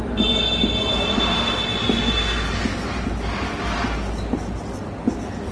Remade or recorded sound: recorded